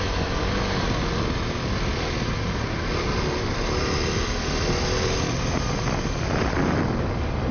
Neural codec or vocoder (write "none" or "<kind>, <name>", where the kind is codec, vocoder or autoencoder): none